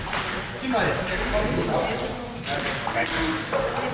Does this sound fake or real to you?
real